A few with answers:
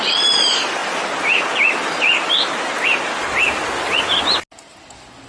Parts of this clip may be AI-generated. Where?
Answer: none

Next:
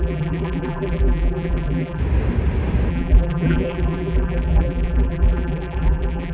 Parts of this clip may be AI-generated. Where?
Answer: 0.0-2.0; 2.9-6.3